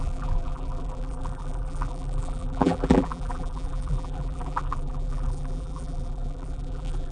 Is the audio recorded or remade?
remade